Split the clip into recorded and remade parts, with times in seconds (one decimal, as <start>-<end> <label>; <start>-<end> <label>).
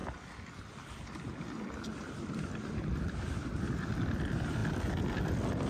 0.0-2.5 recorded; 2.5-4.6 remade; 4.6-5.7 recorded